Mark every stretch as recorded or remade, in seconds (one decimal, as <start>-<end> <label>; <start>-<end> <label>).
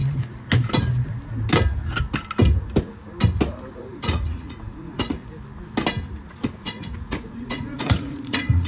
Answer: 0.0-3.7 recorded; 3.7-5.2 remade; 5.2-6.3 recorded; 6.3-8.7 remade